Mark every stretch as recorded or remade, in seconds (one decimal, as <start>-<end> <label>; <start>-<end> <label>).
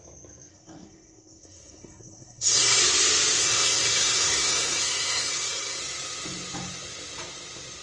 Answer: 0.0-0.5 recorded; 0.5-2.8 remade; 2.8-3.4 recorded; 3.4-5.8 remade; 5.8-7.8 recorded